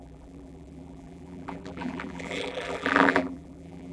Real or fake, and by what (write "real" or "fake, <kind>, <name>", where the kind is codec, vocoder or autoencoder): fake, vocoder, BigVGAN v2